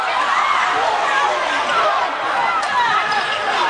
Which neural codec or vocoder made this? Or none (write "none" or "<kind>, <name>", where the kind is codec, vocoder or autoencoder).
none